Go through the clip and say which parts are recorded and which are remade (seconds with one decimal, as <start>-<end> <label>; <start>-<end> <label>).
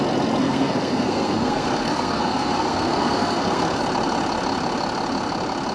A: 0.0-0.4 recorded; 0.4-3.8 remade; 3.8-5.7 recorded